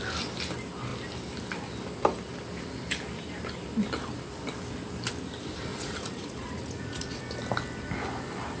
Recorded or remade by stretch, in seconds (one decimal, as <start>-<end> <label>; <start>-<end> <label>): 0.0-5.7 recorded; 5.7-7.2 remade; 7.2-8.6 recorded